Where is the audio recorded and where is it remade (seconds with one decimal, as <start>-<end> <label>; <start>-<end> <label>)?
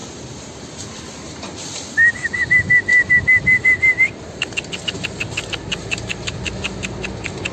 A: 0.0-2.1 remade; 2.1-2.9 recorded; 2.9-4.5 remade; 4.5-7.5 recorded